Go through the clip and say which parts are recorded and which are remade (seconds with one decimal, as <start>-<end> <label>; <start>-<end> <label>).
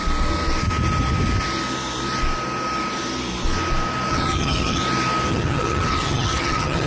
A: 0.0-4.1 recorded; 4.1-4.8 remade; 4.8-5.3 recorded; 5.3-6.9 remade